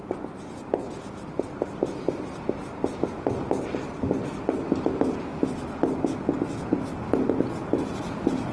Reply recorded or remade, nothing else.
recorded